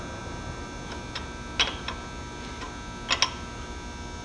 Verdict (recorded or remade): recorded